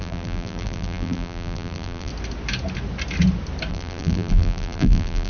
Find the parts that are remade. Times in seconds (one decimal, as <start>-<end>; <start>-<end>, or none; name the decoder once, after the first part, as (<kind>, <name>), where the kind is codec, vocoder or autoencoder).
0.0-2.1 (vocoder, BigVGAN v2); 3.7-5.3